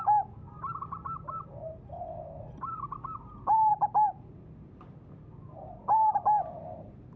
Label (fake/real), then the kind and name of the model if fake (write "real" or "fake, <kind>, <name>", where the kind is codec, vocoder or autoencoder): real